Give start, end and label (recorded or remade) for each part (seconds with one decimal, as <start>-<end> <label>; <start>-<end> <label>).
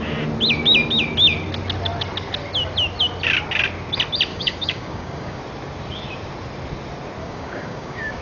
0.0-4.3 recorded; 4.3-5.4 remade; 5.4-7.2 recorded; 7.2-8.2 remade